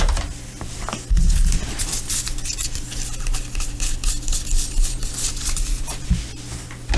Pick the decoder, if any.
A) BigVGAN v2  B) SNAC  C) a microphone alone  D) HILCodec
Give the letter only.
C